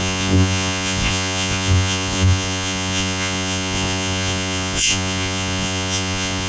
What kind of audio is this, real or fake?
fake